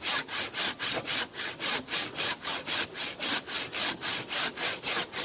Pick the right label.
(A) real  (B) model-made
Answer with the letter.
A